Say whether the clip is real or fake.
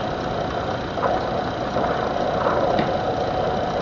real